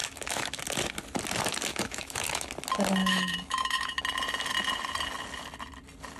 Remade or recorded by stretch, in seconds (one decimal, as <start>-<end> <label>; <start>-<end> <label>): 0.0-0.6 remade; 0.6-1.7 recorded; 1.7-2.5 remade; 2.5-3.0 recorded; 3.0-4.0 remade; 4.0-6.2 recorded